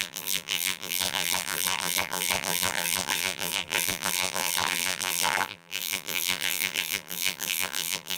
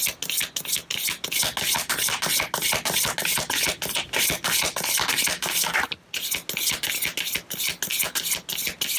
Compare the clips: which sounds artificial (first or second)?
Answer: first